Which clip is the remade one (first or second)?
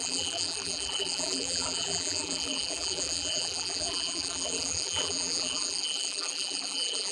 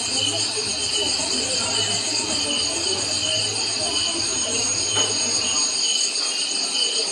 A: first